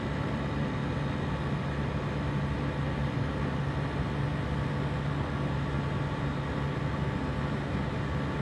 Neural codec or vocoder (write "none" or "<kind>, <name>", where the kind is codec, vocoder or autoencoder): none